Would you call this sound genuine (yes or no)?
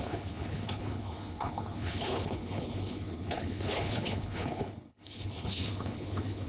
no